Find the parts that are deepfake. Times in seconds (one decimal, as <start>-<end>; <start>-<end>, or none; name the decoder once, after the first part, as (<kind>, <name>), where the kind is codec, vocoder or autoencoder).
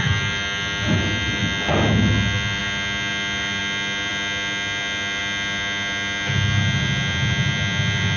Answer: none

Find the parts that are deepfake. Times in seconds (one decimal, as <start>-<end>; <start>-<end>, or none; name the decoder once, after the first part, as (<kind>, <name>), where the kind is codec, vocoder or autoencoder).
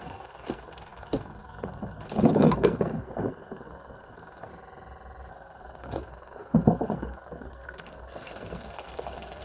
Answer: 0.0-4.5 (codec, SNAC); 5.3-9.4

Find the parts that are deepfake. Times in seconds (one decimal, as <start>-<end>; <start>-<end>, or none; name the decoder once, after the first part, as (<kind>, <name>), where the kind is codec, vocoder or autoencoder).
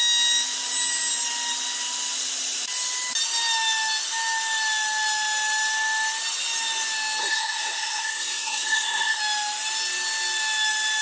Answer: 7.2-9.2 (codec, SNAC)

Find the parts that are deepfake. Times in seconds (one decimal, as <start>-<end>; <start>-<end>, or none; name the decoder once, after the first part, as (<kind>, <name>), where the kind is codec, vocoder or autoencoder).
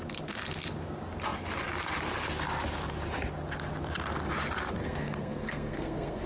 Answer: 4.8-6.3 (codec, SNAC)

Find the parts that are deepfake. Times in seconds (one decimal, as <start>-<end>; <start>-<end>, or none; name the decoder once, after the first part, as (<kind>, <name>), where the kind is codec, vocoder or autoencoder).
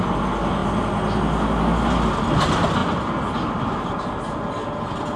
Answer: none